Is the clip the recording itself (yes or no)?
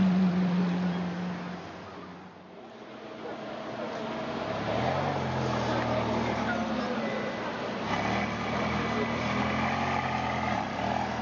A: yes